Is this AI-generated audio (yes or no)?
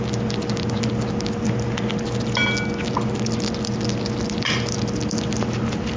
no